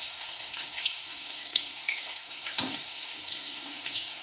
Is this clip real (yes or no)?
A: no